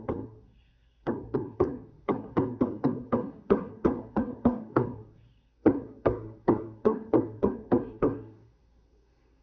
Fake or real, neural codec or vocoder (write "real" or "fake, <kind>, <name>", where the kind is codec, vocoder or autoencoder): fake, codec, SNAC